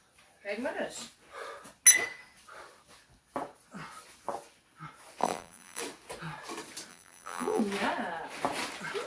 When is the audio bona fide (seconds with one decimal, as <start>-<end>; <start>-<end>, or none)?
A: 0.0-5.2; 5.8-6.9; 7.6-9.1